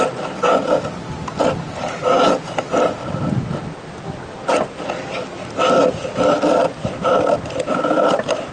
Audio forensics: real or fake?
real